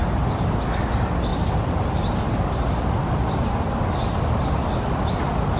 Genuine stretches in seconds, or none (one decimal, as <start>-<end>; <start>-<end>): 0.0-5.6